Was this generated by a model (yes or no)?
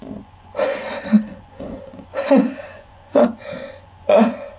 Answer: yes